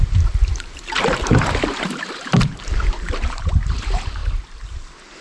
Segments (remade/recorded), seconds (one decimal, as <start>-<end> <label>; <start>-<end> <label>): 0.0-4.2 remade; 4.2-5.2 recorded